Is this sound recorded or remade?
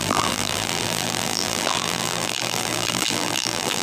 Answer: remade